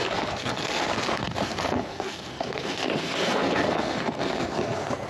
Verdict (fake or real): fake